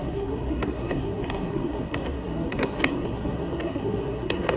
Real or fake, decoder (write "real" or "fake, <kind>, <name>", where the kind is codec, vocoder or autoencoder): fake, codec, SNAC